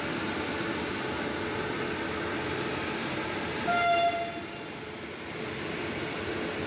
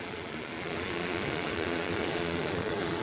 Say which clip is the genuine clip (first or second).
first